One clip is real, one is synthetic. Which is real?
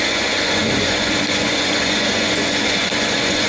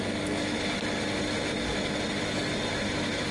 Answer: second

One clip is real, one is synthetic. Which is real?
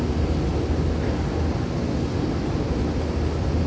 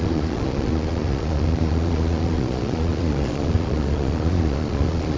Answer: first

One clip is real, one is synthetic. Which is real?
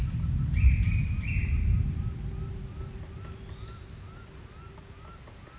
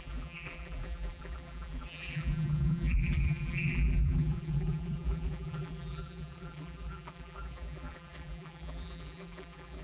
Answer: first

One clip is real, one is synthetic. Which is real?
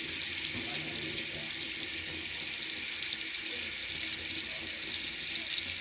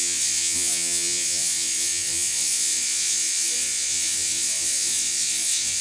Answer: first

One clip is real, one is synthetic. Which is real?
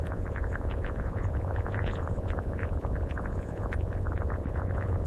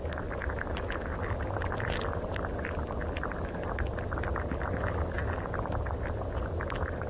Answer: second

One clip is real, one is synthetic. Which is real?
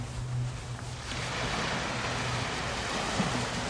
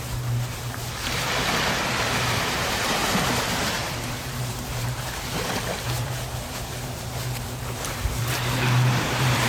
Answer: first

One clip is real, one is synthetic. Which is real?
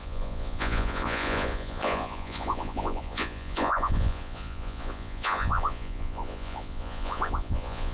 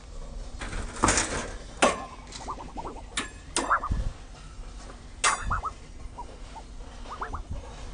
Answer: second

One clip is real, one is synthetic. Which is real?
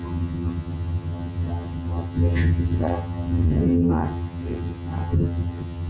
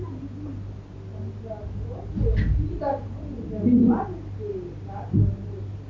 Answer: second